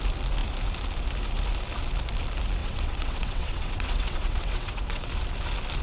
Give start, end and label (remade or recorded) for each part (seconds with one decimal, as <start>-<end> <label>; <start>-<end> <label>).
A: 0.0-2.6 recorded; 2.6-5.1 remade; 5.1-5.8 recorded